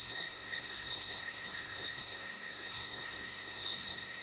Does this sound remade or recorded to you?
remade